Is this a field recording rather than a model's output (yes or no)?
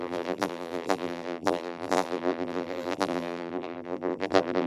no